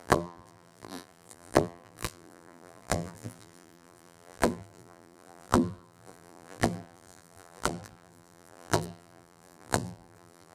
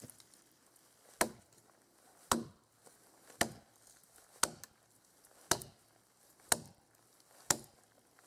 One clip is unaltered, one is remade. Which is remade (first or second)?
first